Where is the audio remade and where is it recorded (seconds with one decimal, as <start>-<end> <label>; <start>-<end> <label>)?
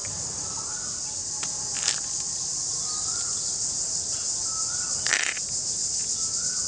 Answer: 0.0-6.7 recorded